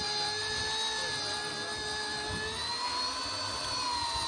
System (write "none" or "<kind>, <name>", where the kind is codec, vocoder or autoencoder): none